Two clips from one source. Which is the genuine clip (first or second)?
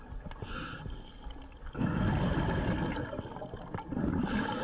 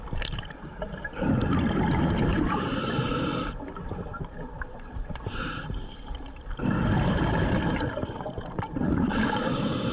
first